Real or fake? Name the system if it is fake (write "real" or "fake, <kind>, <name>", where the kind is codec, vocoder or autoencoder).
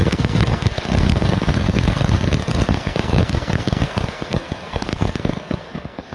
fake, codec, SNAC